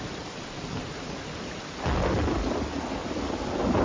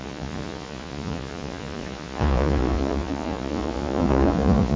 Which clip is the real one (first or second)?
first